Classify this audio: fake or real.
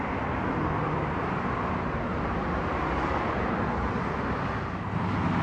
real